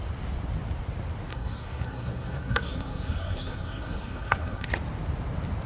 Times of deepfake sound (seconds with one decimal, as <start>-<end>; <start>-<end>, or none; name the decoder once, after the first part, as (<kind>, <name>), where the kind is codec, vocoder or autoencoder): 1.3-4.7 (codec, SNAC)